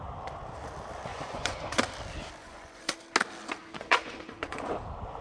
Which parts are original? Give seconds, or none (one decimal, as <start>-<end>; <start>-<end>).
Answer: 0.0-1.1; 1.8-2.4; 2.9-3.6; 4.7-5.2